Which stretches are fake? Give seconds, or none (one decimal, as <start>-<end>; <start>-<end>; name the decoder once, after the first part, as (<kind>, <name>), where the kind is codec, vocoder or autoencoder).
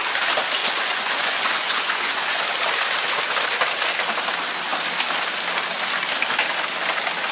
0.6-2.4 (vocoder, Vocos)